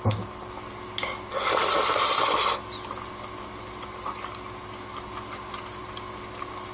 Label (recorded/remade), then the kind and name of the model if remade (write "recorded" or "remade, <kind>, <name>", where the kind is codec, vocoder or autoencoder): recorded